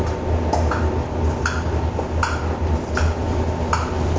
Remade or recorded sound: remade